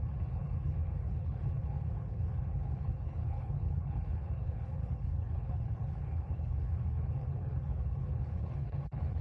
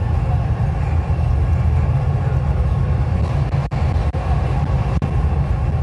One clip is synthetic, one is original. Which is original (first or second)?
second